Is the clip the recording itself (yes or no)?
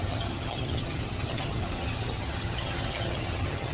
no